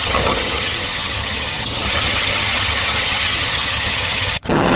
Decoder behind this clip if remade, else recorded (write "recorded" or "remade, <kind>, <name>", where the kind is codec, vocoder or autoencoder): remade, vocoder, HiFi-GAN